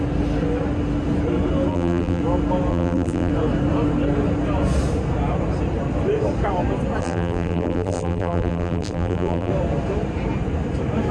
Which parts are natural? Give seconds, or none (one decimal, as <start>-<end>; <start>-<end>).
0.0-1.7; 2.2-2.7; 3.3-7.0; 9.5-11.1